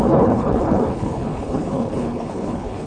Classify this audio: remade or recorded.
remade